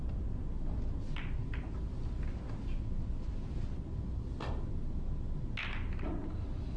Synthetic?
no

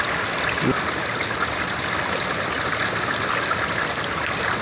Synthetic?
no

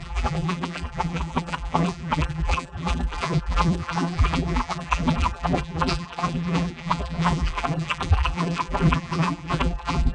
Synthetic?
yes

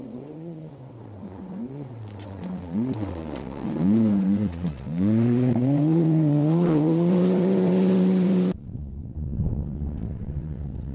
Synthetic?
yes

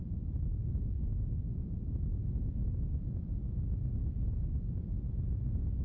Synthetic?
no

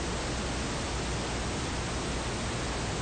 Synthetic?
no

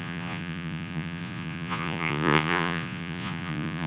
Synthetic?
yes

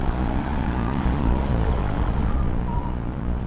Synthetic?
yes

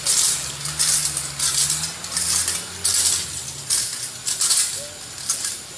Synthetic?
no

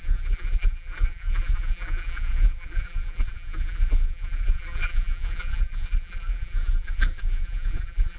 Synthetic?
yes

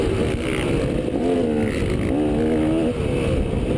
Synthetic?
no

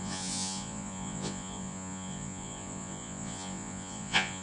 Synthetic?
yes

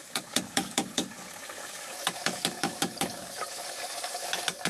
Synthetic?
yes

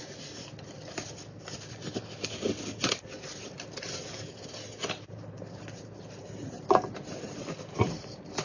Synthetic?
no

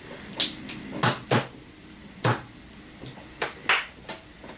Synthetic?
no